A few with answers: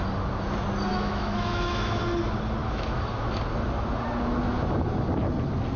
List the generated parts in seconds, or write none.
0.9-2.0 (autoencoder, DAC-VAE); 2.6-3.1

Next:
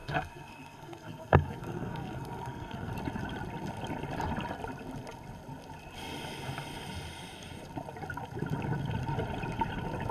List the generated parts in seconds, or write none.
0.0-2.9 (codec, SNAC)

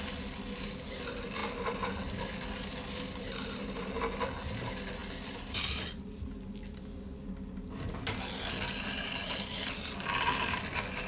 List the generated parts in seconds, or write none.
none

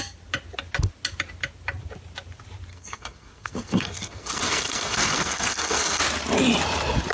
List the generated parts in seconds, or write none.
2.7-6.0 (codec, SNAC)

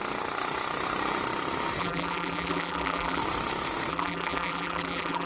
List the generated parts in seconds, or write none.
1.8-3.2 (vocoder, BigVGAN v2); 3.9-5.3

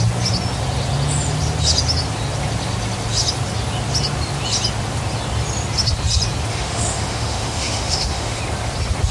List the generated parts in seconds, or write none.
6.5-8.4 (autoencoder, DAC-VAE)

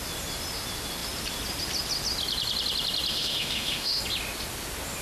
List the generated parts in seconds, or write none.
3.1-4.0 (autoencoder, DAC-VAE)